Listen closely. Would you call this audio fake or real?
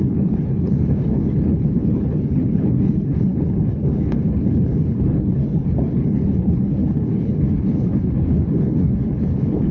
fake